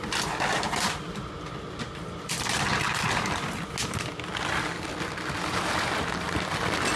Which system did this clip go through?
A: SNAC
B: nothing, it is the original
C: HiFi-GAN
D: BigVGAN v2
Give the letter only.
B